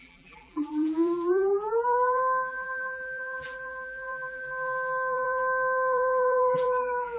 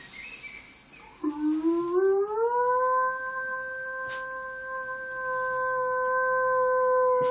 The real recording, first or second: second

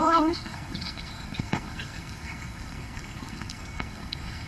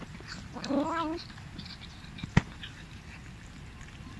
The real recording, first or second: second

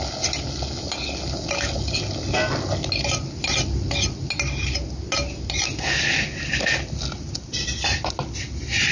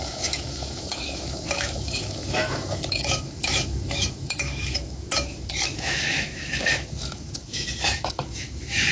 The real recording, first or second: first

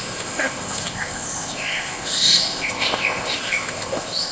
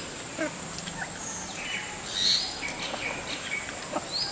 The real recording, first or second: second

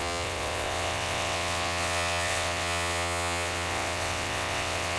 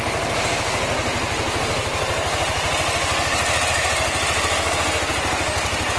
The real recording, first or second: second